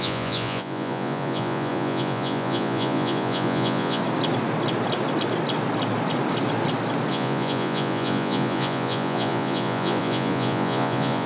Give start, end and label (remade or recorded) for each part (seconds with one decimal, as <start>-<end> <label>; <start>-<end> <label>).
0.0-4.0 remade; 4.0-7.1 recorded; 7.1-11.3 remade